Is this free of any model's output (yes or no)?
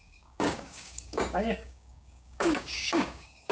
no